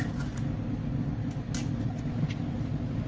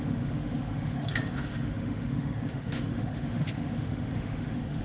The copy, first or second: second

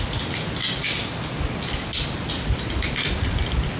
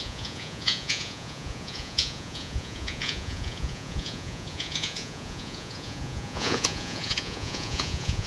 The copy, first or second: second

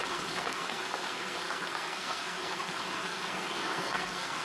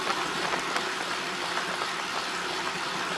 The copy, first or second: first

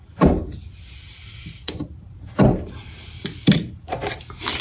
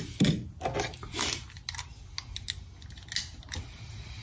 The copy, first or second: first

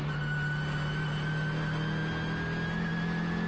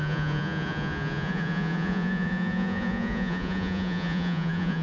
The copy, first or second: second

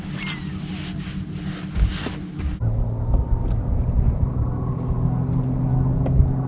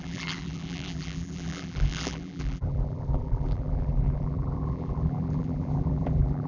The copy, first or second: second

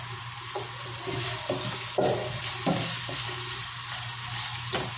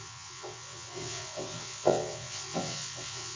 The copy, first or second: second